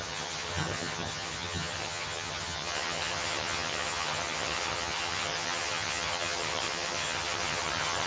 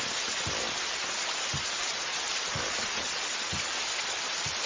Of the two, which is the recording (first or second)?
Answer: second